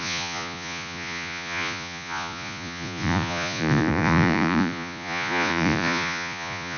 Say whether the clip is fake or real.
fake